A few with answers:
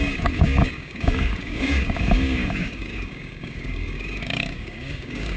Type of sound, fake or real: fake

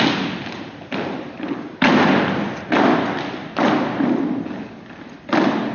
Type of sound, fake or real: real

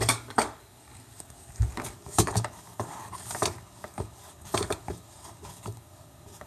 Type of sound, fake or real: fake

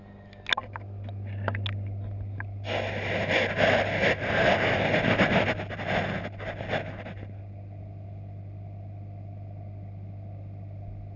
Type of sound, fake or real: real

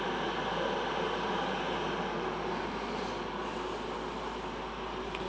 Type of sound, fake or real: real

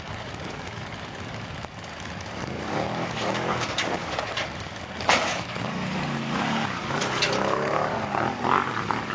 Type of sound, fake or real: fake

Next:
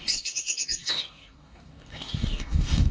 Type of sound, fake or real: fake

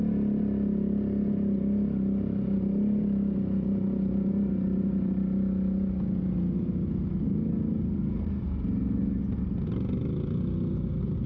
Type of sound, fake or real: real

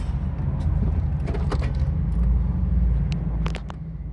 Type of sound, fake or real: real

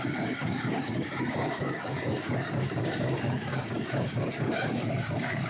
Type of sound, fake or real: fake